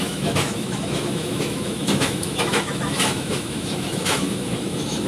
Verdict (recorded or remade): remade